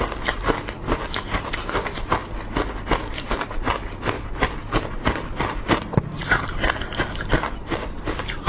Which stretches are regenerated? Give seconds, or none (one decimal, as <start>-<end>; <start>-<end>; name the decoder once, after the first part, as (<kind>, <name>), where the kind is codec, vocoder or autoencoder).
none